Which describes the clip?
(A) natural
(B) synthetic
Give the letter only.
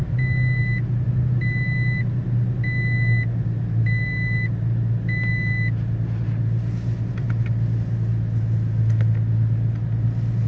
A